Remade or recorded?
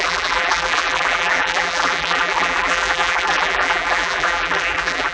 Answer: remade